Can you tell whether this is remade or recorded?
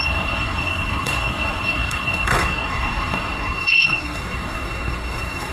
remade